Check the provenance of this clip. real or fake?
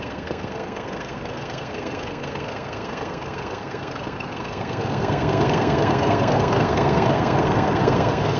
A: fake